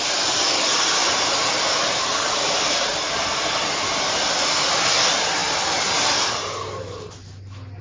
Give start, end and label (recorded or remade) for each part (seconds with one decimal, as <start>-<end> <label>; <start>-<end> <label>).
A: 0.0-1.0 recorded; 1.0-4.2 remade; 4.2-7.8 recorded